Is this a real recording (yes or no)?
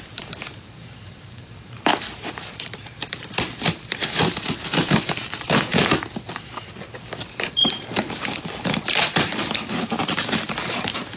no